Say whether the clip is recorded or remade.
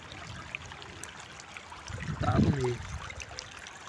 recorded